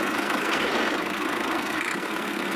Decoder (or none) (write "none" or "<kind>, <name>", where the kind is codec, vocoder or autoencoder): codec, SNAC